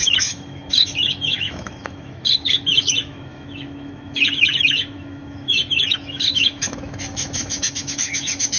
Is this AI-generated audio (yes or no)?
yes